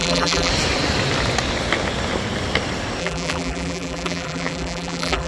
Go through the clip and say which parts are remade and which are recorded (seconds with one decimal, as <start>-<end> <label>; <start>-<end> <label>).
0.0-0.5 remade; 0.5-3.0 recorded; 3.0-5.3 remade